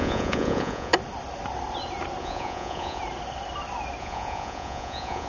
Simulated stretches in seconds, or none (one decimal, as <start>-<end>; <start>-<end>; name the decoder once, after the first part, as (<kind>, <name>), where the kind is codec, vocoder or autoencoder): 0.0-0.9 (vocoder, Vocos); 2.2-3.0; 4.0-5.3